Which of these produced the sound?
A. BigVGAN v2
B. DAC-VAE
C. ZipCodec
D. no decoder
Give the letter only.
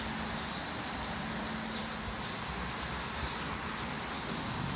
D